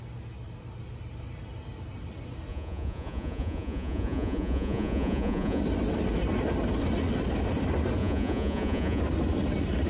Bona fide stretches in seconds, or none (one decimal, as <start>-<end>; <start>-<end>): 0.0-2.5; 5.6-8.0; 9.0-9.9